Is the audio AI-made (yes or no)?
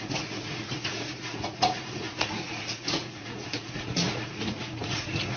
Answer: yes